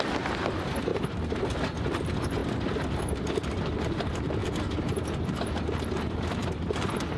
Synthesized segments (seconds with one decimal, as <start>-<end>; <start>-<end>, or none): 0.0-0.9; 2.0-2.4; 3.1-4.4; 5.2-7.2